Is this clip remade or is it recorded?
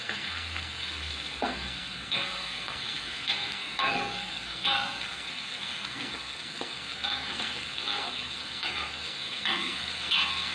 remade